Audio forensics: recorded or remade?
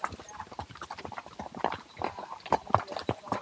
recorded